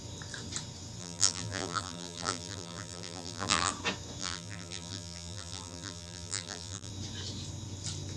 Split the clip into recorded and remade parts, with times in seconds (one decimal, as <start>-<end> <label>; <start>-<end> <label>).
0.0-1.0 recorded; 1.0-3.7 remade; 3.7-4.2 recorded; 4.2-6.9 remade; 6.9-8.2 recorded